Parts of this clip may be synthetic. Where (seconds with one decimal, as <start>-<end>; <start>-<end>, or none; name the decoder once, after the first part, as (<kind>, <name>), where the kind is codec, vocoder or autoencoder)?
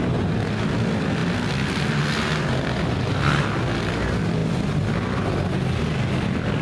none